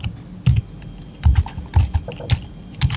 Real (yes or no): yes